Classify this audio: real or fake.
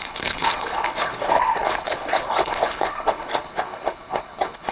fake